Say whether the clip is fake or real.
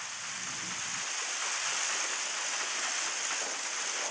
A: real